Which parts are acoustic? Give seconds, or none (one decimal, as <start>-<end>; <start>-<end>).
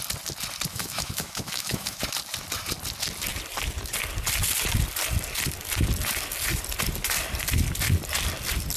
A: 0.0-0.7; 2.0-8.8